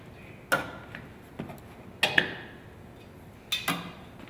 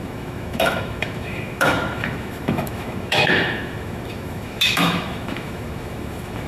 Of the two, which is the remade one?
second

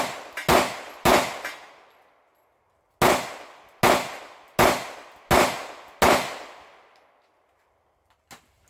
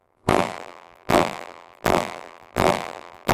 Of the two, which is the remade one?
second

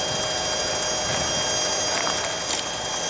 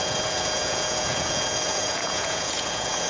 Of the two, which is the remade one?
second